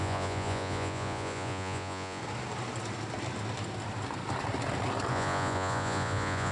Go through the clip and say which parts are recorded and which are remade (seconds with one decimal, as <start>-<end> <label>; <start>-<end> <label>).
0.0-2.2 remade; 2.2-5.1 recorded; 5.1-6.5 remade